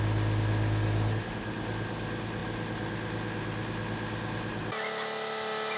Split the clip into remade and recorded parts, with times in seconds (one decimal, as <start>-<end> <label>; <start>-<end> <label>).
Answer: 0.0-5.8 recorded